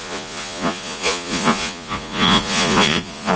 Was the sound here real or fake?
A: fake